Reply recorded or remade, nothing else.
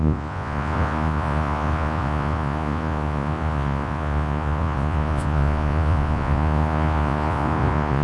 remade